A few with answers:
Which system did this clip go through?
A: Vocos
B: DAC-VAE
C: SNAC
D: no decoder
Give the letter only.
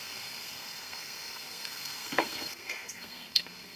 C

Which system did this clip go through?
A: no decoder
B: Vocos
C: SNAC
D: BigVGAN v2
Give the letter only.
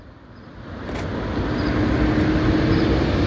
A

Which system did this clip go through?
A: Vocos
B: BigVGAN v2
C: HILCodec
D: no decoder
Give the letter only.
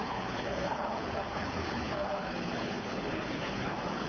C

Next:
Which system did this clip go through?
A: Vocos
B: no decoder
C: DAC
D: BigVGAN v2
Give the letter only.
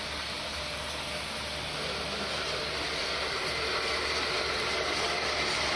B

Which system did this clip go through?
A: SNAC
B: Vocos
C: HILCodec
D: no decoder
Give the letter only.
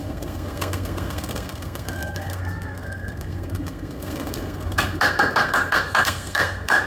A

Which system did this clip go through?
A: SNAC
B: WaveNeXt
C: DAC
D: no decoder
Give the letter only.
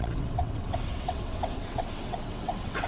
B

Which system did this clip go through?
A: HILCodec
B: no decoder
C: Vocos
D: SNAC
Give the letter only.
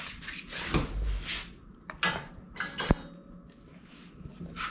B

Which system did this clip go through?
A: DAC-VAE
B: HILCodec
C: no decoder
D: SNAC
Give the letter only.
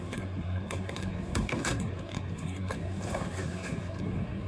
D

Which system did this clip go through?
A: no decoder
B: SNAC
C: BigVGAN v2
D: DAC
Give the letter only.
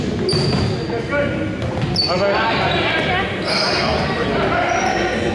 A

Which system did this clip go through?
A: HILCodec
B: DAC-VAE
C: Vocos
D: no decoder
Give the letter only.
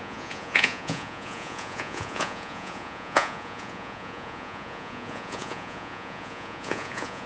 C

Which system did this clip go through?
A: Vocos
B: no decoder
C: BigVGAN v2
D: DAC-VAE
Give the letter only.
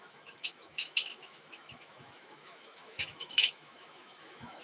D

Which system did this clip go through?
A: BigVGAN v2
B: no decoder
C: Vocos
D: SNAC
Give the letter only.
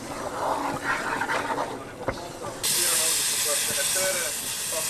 B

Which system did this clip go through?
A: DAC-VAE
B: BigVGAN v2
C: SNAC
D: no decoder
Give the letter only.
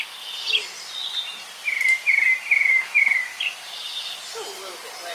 D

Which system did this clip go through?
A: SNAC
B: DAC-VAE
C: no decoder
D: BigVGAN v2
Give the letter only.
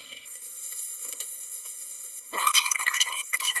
A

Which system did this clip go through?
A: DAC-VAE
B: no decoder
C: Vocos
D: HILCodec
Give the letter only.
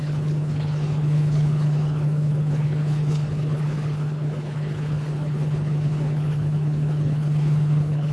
D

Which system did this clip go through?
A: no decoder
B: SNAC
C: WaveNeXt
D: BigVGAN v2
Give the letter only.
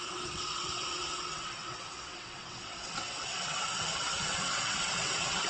C